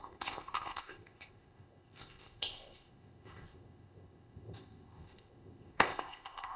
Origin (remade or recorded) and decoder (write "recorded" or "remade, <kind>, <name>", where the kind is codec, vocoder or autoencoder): remade, codec, ZipCodec